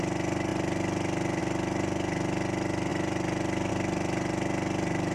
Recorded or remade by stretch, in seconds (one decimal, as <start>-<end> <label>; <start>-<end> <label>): 0.0-5.1 recorded